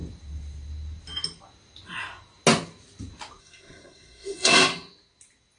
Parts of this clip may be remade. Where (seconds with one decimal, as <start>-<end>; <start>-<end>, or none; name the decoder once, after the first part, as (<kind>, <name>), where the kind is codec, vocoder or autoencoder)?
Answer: 3.4-4.6 (codec, SNAC)